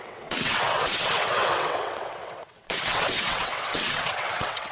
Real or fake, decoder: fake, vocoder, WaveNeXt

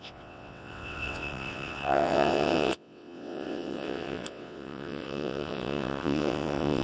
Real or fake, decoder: fake, vocoder, WaveNeXt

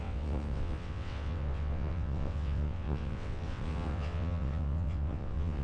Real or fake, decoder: fake, vocoder, WaveNeXt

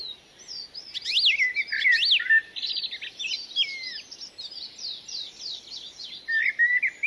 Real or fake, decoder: real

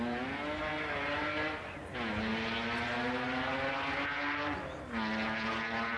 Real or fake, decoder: real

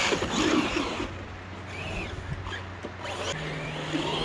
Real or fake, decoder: real